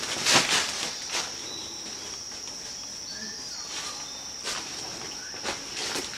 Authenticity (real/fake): real